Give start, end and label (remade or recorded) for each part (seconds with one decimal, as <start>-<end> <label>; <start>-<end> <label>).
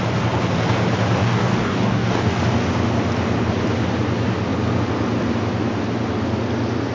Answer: 0.0-1.2 recorded; 1.2-2.4 remade; 2.4-6.9 recorded